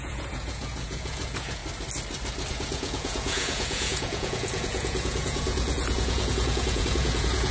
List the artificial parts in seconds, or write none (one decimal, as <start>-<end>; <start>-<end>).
0.0-1.6; 2.5-7.5